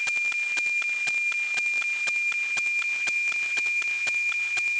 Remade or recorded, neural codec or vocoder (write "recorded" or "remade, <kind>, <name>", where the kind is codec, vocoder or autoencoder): recorded